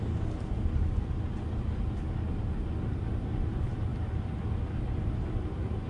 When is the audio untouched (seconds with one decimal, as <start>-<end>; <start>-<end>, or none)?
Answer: 0.0-3.9; 4.6-5.9